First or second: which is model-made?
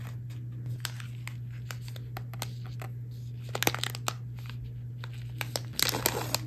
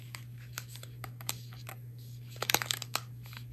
second